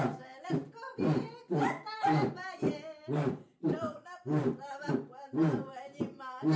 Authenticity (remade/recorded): remade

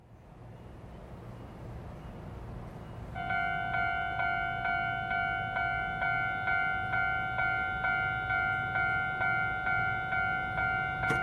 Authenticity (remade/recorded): recorded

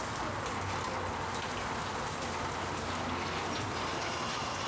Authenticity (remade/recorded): recorded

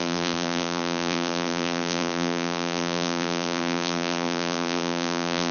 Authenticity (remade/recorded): remade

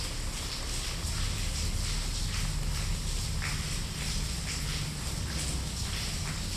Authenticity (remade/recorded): recorded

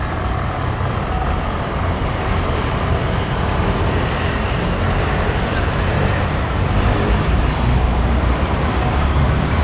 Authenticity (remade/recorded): remade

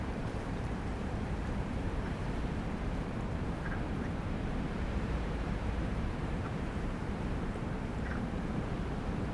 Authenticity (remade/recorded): remade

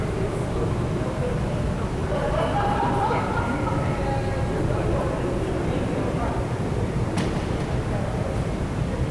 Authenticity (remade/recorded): remade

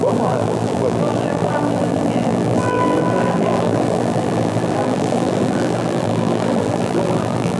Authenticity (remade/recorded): remade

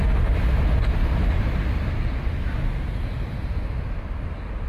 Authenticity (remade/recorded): recorded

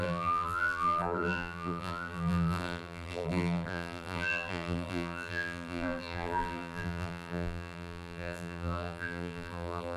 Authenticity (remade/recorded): remade